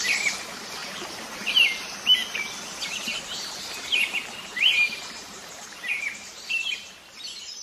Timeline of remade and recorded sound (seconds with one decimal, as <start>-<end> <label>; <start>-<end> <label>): 0.0-0.8 recorded; 0.8-1.5 remade; 1.5-3.1 recorded; 3.1-6.5 remade; 6.5-7.6 recorded